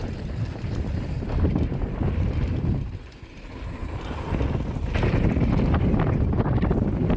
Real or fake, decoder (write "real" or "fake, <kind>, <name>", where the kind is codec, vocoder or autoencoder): real